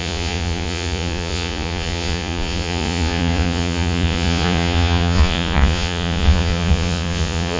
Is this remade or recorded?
remade